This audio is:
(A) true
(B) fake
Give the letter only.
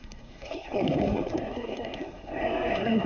B